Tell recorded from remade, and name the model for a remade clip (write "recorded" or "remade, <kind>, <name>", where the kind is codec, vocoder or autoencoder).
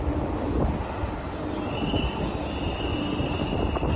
recorded